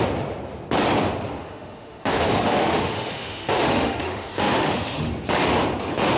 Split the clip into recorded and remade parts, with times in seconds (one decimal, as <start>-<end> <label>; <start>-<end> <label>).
0.0-1.4 recorded; 1.4-5.1 remade; 5.1-6.2 recorded